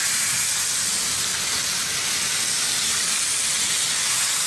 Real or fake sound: real